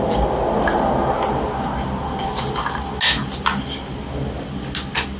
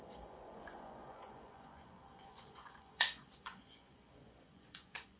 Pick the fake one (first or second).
second